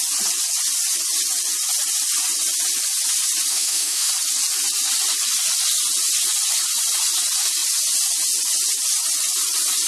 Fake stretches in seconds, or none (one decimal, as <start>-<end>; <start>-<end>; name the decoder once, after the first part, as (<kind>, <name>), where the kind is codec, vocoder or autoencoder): 3.5-4.1 (autoencoder, DAC-VAE)

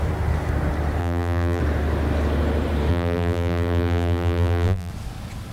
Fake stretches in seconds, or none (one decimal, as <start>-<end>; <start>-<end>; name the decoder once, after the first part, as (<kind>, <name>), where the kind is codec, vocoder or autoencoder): 1.0-1.6 (vocoder, BigVGAN v2); 2.9-4.9

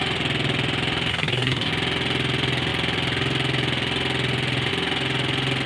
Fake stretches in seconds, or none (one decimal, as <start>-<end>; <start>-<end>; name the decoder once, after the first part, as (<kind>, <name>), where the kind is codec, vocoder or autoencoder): 1.1-1.7 (codec, SNAC)

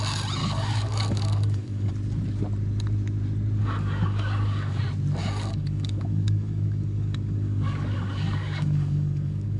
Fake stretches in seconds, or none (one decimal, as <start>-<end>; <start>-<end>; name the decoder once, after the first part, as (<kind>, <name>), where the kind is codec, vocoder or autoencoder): 0.4-1.9 (codec, DAC); 3.6-4.8; 5.2-9.6

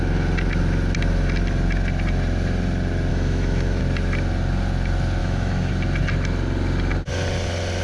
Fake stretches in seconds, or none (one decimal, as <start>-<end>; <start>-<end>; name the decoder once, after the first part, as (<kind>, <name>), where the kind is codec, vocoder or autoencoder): 3.1-3.8 (autoencoder, DAC-VAE); 5.2-5.7